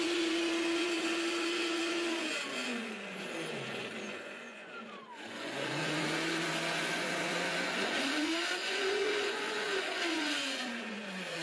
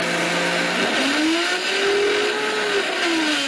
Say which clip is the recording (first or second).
second